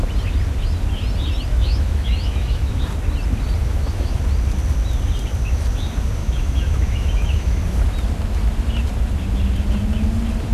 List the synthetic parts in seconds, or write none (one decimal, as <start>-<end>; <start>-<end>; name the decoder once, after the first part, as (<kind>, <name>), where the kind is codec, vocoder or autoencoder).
1.5-2.8 (autoencoder, DAC-VAE); 3.6-4.2; 6.2-7.6

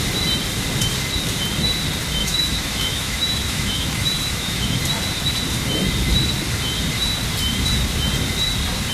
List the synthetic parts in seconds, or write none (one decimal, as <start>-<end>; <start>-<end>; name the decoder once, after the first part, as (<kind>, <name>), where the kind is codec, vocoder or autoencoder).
2.2-4.8 (autoencoder, DAC-VAE)

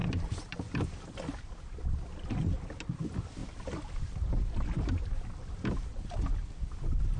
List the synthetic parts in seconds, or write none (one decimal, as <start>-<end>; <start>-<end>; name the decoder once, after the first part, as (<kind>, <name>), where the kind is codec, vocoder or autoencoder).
none